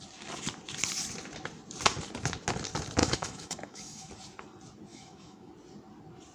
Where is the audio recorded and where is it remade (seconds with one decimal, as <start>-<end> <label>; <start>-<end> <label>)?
0.0-3.0 recorded; 3.0-4.1 remade; 4.1-4.9 recorded; 4.9-5.5 remade; 5.5-6.3 recorded